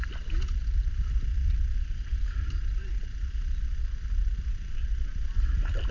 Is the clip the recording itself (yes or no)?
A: yes